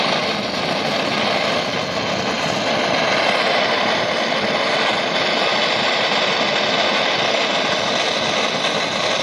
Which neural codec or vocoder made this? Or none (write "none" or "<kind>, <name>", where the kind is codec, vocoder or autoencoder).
none